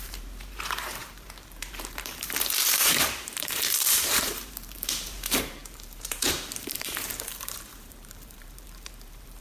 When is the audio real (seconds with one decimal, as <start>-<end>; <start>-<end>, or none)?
none